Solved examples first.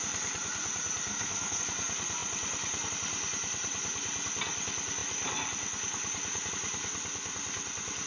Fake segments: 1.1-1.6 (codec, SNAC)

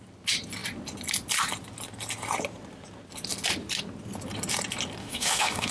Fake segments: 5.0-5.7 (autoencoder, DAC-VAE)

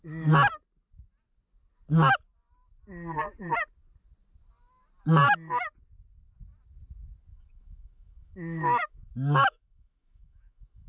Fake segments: 7.3-10.9 (autoencoder, DAC-VAE)

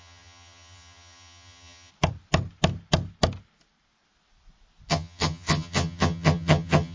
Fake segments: 0.0-1.9 (vocoder, HiFi-GAN); 4.9-6.9

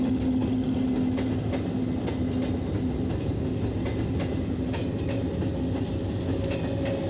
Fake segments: none

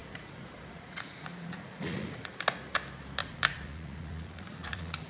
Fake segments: 0.0-2.3 (vocoder, Vocos); 3.2-5.1

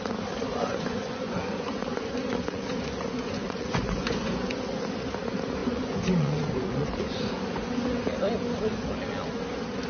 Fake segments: 0.5-4.6 (vocoder, Vocos); 5.6-7.7